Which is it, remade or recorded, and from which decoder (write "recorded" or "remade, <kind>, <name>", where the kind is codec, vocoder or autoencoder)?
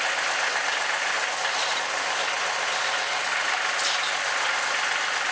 recorded